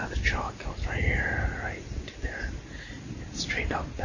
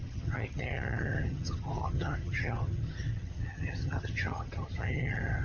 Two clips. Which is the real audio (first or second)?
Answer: first